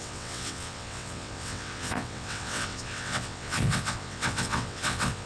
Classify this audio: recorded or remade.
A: remade